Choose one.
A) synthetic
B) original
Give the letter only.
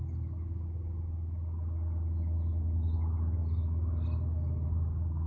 B